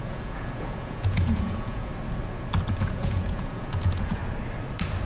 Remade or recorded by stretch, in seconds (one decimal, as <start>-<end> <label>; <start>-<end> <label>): 0.0-1.9 remade; 1.9-2.7 recorded; 2.7-4.2 remade; 4.2-5.1 recorded